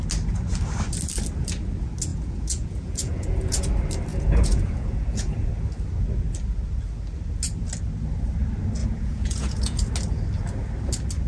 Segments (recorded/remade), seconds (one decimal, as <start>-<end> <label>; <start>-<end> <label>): 0.0-2.1 recorded; 2.1-3.6 remade; 3.6-4.1 recorded; 4.1-5.5 remade; 5.5-8.8 recorded; 8.8-9.9 remade; 9.9-11.3 recorded